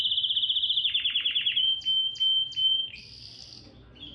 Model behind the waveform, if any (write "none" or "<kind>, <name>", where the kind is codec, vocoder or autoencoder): none